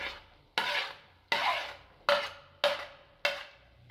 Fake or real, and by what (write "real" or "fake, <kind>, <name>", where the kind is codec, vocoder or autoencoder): real